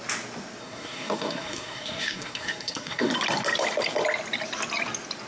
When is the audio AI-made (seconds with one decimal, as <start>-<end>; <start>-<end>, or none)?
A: 0.6-3.1